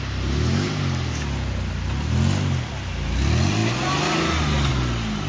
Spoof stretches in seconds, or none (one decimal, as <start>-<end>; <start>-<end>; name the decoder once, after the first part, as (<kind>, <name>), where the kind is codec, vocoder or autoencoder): none